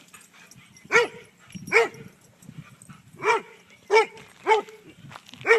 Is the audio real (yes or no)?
yes